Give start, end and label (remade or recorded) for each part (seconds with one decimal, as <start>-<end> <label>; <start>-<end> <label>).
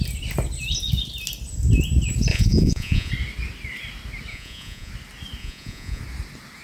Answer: 0.0-2.3 recorded; 2.3-3.1 remade; 3.1-4.3 recorded; 4.3-4.9 remade; 4.9-5.4 recorded; 5.4-6.0 remade; 6.0-6.6 recorded